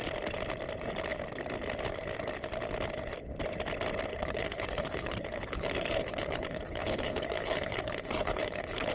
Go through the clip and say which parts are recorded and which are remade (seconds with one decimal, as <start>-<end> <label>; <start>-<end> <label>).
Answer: 0.0-4.1 recorded; 4.1-8.9 remade